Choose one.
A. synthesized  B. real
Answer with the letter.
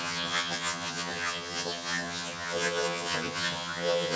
A